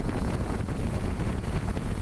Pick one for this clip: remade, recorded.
remade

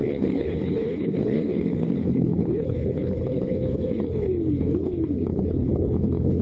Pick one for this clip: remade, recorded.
remade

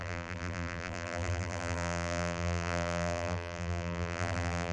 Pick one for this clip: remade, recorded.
remade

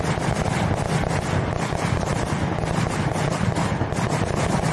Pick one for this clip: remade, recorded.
recorded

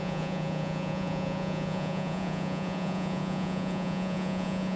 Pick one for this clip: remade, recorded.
remade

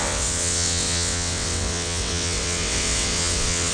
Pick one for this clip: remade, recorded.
remade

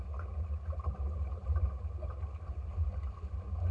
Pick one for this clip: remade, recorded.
recorded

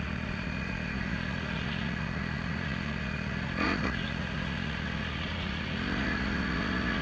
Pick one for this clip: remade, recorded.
remade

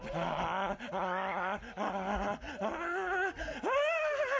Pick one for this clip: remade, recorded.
recorded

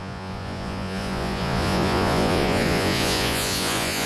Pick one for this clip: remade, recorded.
remade